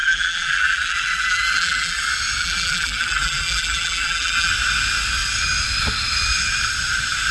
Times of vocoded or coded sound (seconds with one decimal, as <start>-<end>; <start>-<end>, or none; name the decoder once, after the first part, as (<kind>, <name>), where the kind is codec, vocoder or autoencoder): 0.0-2.0 (vocoder, BigVGAN v2); 2.4-4.5